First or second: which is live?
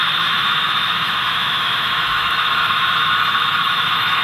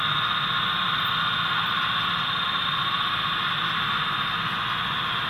second